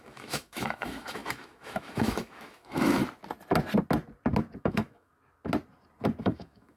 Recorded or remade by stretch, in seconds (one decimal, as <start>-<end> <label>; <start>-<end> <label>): 0.0-3.0 remade; 3.0-4.6 recorded; 4.6-5.1 remade; 5.1-6.2 recorded; 6.2-6.8 remade